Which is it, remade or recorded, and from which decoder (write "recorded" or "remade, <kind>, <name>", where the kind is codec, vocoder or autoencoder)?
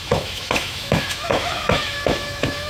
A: remade, autoencoder, DAC-VAE